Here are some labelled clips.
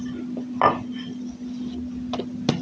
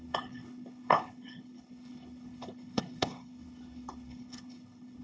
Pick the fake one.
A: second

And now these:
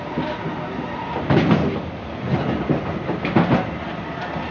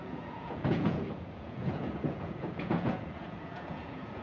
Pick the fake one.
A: second